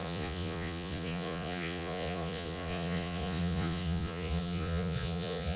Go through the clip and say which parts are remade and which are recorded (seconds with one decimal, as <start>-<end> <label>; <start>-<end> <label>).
0.0-5.6 remade